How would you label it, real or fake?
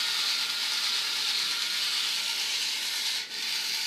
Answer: real